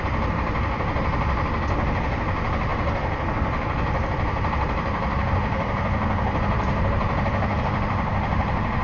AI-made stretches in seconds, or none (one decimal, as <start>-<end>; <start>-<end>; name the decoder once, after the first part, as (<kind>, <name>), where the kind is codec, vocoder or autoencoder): none